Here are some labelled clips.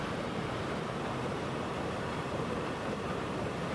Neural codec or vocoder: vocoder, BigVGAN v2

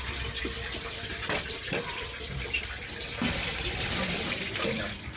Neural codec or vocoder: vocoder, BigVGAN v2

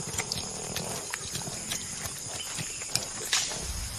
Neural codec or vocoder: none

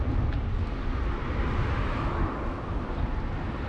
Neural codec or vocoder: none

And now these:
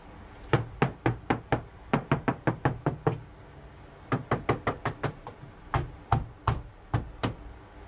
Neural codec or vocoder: none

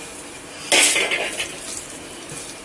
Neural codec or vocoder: none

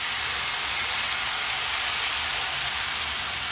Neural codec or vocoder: none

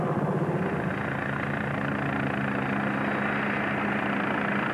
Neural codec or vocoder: none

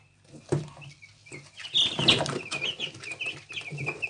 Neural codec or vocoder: vocoder, BigVGAN v2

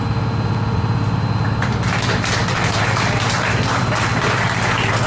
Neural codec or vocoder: none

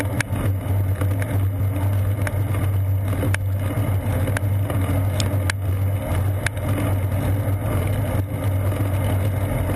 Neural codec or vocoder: none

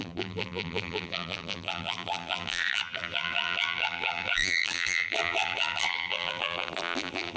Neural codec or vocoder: vocoder, BigVGAN v2